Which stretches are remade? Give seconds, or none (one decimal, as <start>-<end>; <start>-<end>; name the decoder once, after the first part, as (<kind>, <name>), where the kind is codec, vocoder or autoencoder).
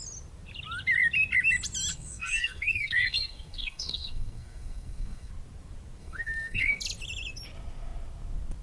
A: 1.9-5.3 (codec, SNAC); 6.0-6.8